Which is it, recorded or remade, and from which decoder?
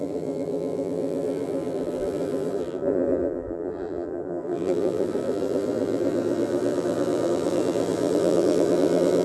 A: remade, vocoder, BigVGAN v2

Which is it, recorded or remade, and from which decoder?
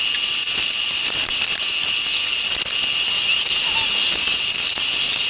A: recorded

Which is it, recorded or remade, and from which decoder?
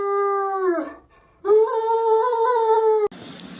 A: recorded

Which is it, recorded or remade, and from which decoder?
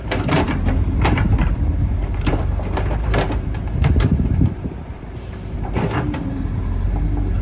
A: remade, vocoder, BigVGAN v2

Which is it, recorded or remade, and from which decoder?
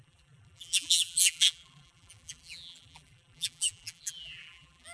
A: remade, vocoder, BigVGAN v2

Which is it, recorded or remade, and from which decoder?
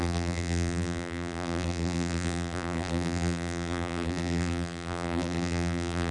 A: remade, vocoder, BigVGAN v2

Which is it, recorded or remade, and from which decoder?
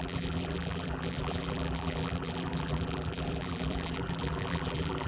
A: remade, vocoder, BigVGAN v2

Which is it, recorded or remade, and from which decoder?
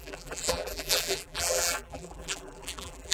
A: remade, vocoder, BigVGAN v2